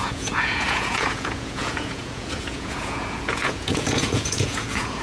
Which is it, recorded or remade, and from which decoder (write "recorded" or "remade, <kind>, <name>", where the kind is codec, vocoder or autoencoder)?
remade, vocoder, Vocos